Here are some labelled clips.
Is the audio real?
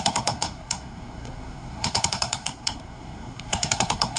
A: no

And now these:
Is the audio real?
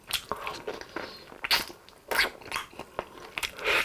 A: yes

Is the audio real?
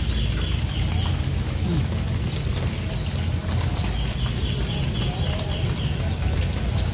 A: yes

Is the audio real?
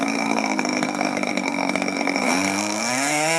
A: no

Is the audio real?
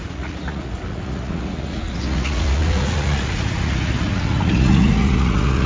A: no